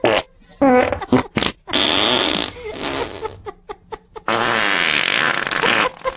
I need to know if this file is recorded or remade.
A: recorded